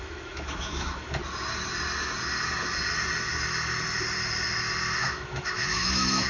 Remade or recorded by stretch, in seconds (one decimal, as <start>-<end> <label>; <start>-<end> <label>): 0.0-1.2 remade; 1.2-5.0 recorded; 5.0-6.3 remade